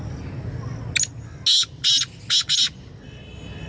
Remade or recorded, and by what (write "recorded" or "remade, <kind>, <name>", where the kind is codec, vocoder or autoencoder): recorded